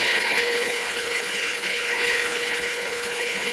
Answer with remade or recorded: remade